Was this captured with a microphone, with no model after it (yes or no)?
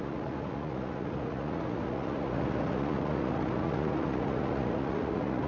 no